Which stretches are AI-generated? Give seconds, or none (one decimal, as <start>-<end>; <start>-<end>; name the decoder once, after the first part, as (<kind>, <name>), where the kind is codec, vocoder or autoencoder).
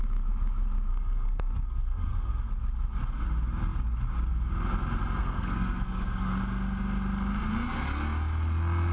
0.9-2.5 (codec, SNAC); 5.2-6.4